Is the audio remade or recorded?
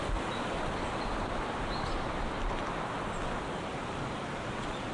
recorded